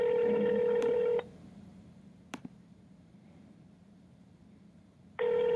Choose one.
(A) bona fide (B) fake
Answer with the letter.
B